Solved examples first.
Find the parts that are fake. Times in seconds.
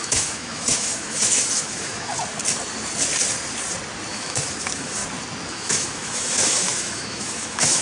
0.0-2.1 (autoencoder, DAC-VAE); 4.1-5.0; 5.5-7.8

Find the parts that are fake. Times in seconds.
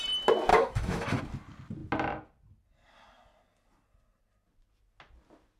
0.5-1.2 (autoencoder, DAC-VAE)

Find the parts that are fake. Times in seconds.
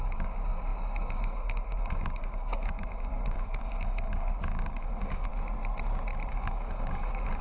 0.0-5.3 (codec, DAC); 6.3-7.4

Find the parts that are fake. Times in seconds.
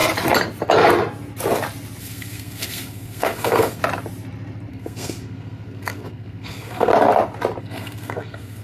2.0-3.8 (codec, SNAC); 4.7-6.9; 7.6-8.6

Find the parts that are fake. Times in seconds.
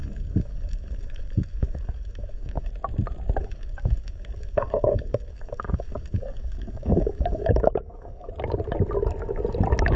0.0-2.7 (codec, DAC); 3.4-8.3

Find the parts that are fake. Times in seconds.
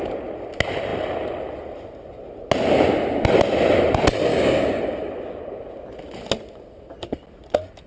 4.3-4.8 (codec, DAC)